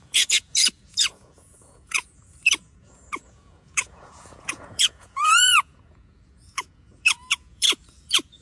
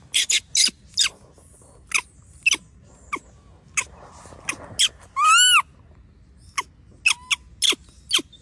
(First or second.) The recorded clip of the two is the second